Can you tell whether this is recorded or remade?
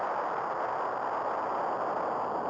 recorded